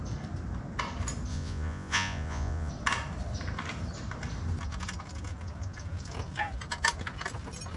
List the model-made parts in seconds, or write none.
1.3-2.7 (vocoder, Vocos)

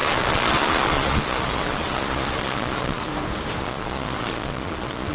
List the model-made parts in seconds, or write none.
0.0-3.1 (vocoder, Vocos); 3.6-5.1

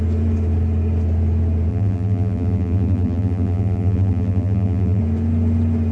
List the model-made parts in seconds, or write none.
1.7-5.0 (vocoder, BigVGAN v2)

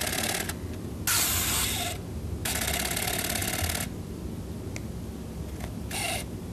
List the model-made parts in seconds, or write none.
none

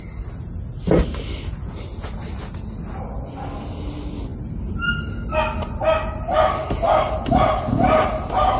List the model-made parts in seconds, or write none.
none

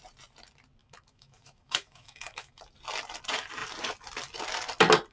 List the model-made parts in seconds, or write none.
0.8-2.6 (autoencoder, DAC-VAE)

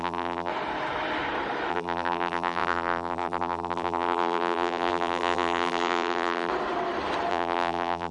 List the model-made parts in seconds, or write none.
0.0-0.5 (vocoder, BigVGAN v2); 1.7-6.5; 7.3-8.1

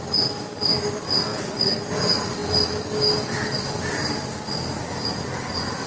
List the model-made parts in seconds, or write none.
none